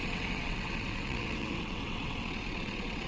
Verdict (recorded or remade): remade